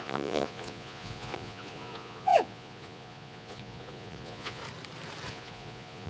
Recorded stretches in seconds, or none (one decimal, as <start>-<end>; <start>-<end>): 4.6-5.3